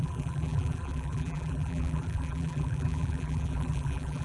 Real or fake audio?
fake